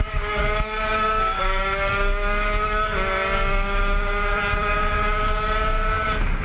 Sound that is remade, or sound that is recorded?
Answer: remade